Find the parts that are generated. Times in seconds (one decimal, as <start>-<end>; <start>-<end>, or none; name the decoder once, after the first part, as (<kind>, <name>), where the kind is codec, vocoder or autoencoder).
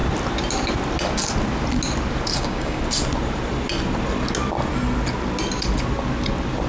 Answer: 2.3-2.8 (codec, DAC)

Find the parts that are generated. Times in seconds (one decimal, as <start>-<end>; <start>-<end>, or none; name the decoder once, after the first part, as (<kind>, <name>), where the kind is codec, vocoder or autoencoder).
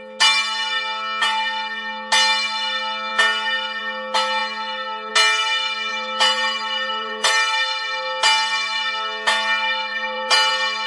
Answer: 5.9-7.3 (vocoder, BigVGAN v2); 9.9-10.5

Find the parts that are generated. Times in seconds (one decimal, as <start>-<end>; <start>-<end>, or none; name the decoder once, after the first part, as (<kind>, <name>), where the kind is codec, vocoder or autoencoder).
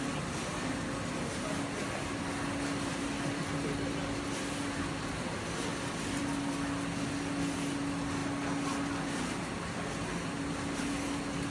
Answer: none